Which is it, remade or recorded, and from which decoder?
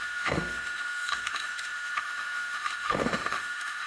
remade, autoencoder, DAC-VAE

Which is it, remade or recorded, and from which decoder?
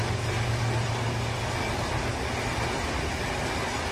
recorded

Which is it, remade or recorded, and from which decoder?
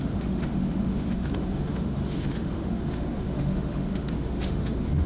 remade, autoencoder, DAC-VAE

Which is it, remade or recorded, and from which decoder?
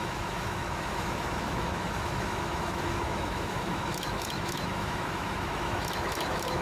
remade, autoencoder, DAC-VAE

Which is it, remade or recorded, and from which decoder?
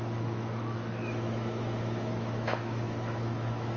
remade, autoencoder, DAC-VAE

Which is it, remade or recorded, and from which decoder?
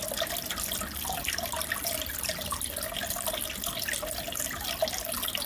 recorded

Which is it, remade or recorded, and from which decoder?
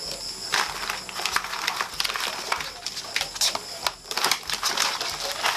recorded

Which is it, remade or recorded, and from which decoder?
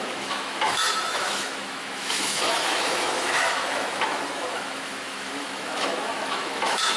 remade, autoencoder, DAC-VAE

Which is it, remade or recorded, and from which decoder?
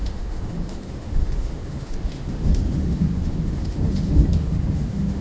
remade, autoencoder, DAC-VAE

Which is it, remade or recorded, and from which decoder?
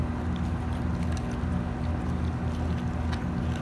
recorded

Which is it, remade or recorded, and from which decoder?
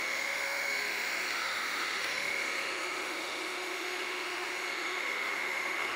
remade, autoencoder, DAC-VAE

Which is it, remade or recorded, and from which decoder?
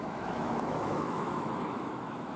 remade, autoencoder, DAC-VAE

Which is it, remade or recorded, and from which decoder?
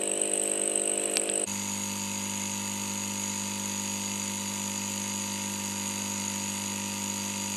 recorded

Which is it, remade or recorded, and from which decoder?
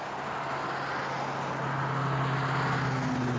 recorded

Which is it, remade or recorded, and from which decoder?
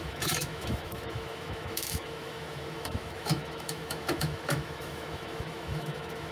remade, autoencoder, DAC-VAE